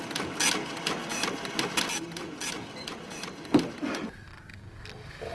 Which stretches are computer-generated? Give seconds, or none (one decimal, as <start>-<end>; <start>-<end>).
none